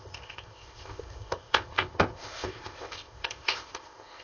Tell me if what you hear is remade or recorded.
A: remade